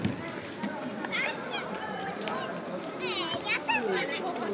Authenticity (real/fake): real